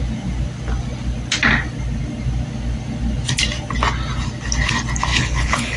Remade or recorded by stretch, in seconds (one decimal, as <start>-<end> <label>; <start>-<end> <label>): 0.0-5.1 recorded; 5.1-5.8 remade